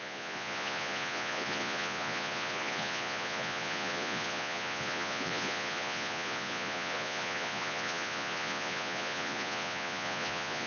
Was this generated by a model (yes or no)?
yes